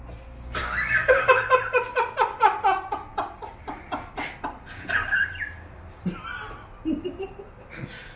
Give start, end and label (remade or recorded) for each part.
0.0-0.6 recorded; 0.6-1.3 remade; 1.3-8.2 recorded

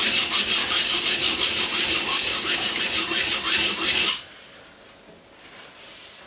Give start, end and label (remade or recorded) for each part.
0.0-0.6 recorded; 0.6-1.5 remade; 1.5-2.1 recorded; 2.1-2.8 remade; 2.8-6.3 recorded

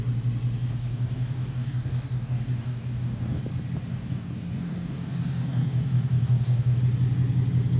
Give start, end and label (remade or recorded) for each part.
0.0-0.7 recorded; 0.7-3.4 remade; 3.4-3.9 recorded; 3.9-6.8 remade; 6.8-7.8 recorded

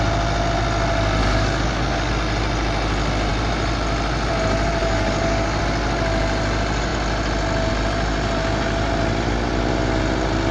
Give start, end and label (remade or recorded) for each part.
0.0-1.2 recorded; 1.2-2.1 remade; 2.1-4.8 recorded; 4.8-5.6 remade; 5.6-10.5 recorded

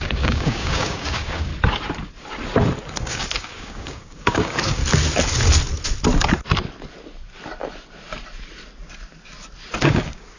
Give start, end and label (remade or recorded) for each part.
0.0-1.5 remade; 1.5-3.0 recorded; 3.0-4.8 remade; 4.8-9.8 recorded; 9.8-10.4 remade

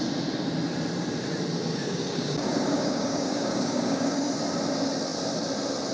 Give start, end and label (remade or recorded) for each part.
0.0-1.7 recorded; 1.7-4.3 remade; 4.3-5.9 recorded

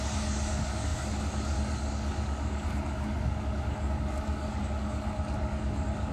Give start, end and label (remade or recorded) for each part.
0.0-6.1 remade